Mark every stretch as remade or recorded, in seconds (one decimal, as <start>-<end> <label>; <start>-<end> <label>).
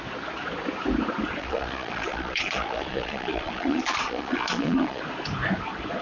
0.0-1.4 recorded; 1.4-5.0 remade; 5.0-6.0 recorded